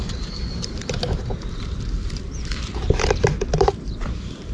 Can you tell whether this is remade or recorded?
remade